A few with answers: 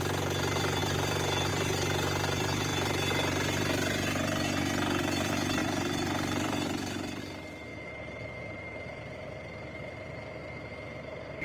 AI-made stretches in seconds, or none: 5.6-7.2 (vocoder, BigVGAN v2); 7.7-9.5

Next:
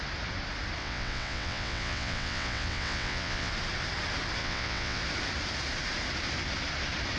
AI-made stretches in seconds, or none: 0.8-3.5 (vocoder, WaveNeXt); 4.4-5.0

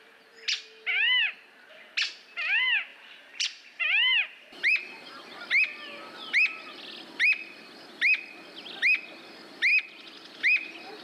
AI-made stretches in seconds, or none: 2.9-5.2 (vocoder, BigVGAN v2)

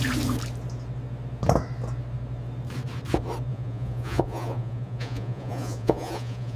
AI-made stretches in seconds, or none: 3.5-6.6 (vocoder, Vocos)

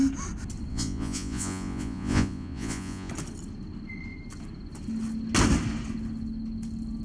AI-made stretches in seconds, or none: 0.7-3.1 (vocoder, Vocos)

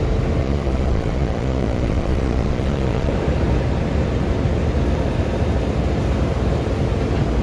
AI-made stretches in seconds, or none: 0.4-3.1 (vocoder, Vocos)

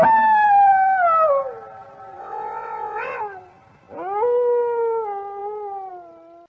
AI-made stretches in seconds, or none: 2.2-3.2 (vocoder, WaveNeXt)

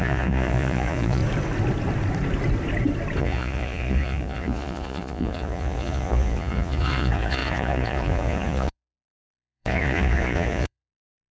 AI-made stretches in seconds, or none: 0.0-1.2 (vocoder, Vocos); 3.2-11.3